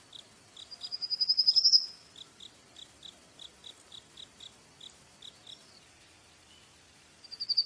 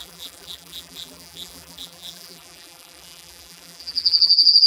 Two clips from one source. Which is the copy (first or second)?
second